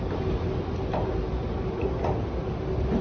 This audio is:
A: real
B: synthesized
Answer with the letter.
A